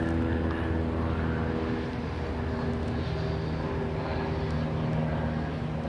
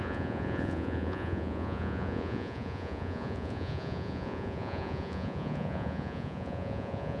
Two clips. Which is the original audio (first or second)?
first